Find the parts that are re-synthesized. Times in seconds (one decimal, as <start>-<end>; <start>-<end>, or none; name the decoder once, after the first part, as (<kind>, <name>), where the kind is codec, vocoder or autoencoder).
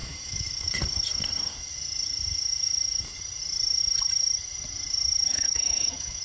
0.0-0.7 (autoencoder, DAC-VAE); 5.3-6.2